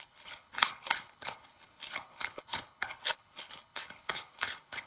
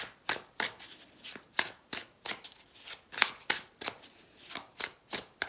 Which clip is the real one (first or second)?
second